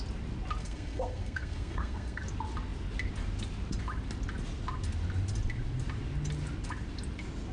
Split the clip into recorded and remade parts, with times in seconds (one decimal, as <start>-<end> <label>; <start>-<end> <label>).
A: 0.0-0.6 recorded; 0.6-2.2 remade; 2.2-7.5 recorded